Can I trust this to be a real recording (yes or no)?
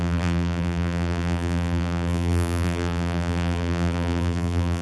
no